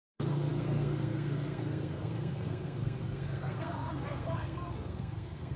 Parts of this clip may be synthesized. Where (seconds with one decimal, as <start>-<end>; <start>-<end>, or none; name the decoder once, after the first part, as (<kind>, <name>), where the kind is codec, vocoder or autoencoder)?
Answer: 0.0-5.6 (codec, SNAC)